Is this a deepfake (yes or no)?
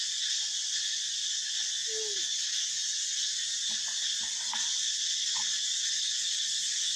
no